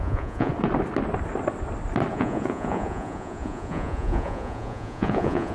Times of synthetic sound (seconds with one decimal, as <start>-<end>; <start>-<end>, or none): 0.0-0.5; 2.1-5.5